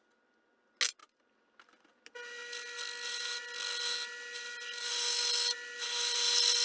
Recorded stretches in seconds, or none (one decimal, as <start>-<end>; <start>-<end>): 0.0-6.6